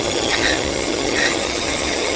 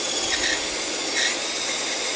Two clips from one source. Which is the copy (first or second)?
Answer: first